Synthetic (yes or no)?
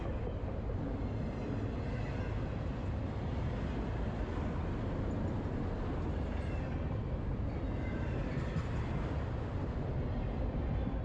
no